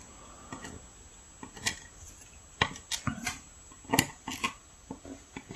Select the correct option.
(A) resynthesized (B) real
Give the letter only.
B